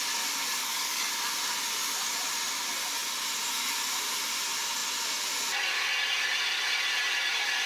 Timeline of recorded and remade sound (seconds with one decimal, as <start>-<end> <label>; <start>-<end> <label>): 0.0-0.6 recorded; 0.6-1.1 remade; 1.1-7.7 recorded

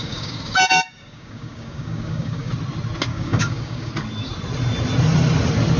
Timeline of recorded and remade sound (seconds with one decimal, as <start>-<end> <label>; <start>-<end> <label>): 0.0-2.5 remade; 2.5-3.1 recorded; 3.1-3.9 remade; 3.9-5.8 recorded

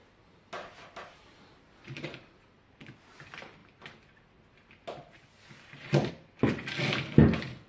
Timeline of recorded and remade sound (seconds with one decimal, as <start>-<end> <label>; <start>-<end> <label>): 0.0-7.7 recorded

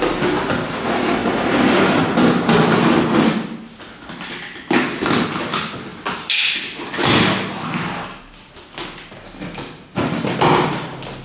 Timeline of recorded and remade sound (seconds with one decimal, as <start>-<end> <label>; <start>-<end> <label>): 0.0-11.2 recorded

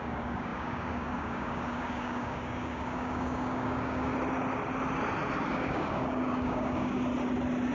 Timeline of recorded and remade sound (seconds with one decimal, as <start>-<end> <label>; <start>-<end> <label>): 0.0-4.1 remade; 4.1-5.5 recorded; 5.5-7.1 remade; 7.1-7.7 recorded